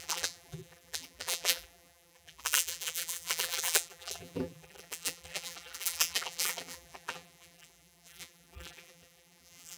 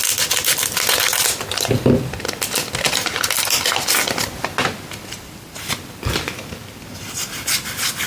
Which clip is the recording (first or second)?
second